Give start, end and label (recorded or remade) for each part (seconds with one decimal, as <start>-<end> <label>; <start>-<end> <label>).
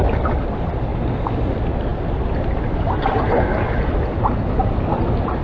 0.0-5.4 recorded